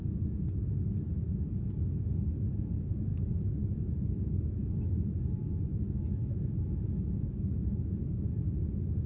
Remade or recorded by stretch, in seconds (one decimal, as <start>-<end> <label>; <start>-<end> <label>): 0.0-3.1 recorded; 3.1-5.0 remade; 5.0-5.7 recorded; 5.7-8.3 remade; 8.3-9.1 recorded